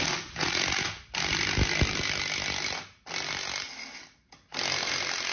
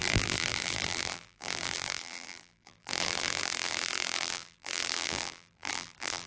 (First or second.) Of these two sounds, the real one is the first